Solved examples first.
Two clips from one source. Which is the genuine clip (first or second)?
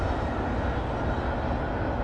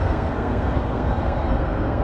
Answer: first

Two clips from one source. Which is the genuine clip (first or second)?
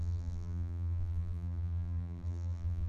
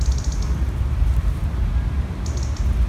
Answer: second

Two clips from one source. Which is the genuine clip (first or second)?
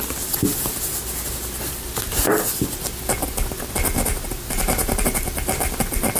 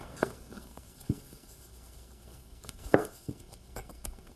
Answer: first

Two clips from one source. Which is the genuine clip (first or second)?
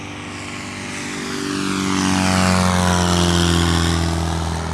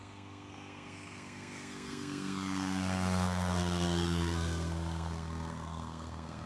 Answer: first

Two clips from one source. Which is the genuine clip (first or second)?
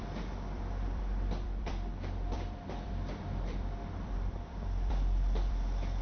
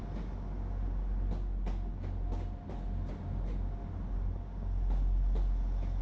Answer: second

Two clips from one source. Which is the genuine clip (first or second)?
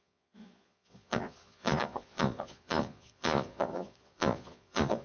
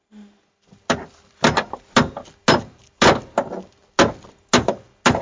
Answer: second